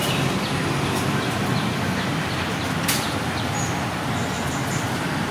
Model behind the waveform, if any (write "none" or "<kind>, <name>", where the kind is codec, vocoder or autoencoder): none